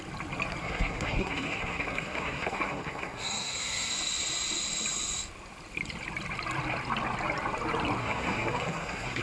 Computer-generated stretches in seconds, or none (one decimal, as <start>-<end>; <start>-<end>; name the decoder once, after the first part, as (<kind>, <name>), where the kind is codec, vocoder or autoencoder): 0.6-3.9 (codec, SNAC); 8.0-9.2